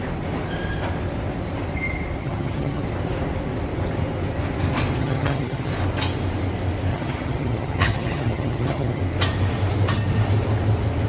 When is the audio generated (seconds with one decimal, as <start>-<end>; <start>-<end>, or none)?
2.2-2.8; 5.0-5.7; 6.9-9.0